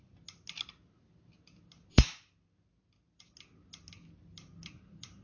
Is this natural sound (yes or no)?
yes